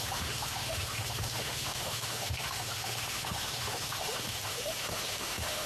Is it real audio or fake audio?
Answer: fake